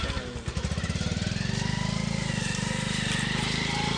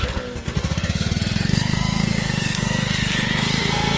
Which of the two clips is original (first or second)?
first